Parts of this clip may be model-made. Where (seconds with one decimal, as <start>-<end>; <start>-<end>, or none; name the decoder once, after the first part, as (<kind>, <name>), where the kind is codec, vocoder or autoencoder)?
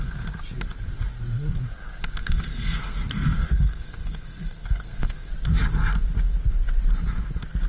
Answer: 2.2-5.3 (codec, SNAC)